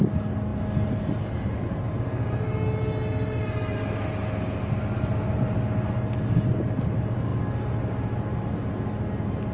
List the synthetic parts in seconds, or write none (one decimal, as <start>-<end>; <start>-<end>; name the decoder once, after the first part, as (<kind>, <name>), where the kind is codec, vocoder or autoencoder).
none